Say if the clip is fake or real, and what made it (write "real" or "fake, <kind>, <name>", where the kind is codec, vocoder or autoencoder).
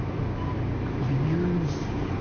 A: real